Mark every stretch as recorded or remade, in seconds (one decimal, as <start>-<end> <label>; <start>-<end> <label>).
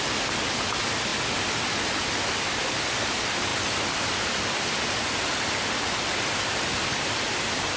0.0-7.8 recorded